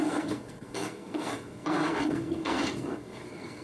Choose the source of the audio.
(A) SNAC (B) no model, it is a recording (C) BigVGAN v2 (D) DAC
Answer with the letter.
A